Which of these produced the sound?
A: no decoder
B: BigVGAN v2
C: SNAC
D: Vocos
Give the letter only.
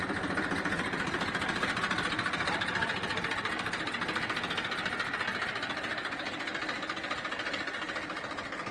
A